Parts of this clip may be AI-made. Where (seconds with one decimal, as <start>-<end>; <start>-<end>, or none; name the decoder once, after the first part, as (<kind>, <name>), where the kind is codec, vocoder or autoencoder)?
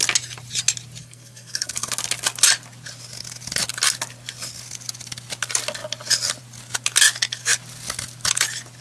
1.0-1.9 (codec, SNAC)